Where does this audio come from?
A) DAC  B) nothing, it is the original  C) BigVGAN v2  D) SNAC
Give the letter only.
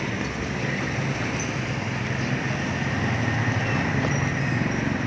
B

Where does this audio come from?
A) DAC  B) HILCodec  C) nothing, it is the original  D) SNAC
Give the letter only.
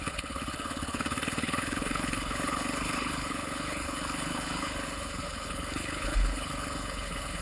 B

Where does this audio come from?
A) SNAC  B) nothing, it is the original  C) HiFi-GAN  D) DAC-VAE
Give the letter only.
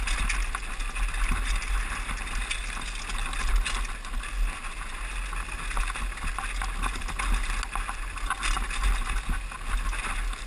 B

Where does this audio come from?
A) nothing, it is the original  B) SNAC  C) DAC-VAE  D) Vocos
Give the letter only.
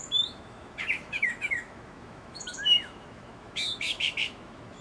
C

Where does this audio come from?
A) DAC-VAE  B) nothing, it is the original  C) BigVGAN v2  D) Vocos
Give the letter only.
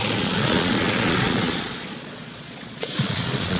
D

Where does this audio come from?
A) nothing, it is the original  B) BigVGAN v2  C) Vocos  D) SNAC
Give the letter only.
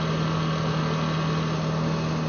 A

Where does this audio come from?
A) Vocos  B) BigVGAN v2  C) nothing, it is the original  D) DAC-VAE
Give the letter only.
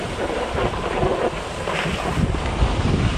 C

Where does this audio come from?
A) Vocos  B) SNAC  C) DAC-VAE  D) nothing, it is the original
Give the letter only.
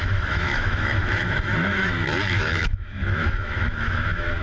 C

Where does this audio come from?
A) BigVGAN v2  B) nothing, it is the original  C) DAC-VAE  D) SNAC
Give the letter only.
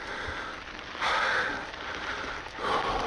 B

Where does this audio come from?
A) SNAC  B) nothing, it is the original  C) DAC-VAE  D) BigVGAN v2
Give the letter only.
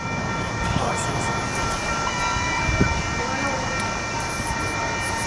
D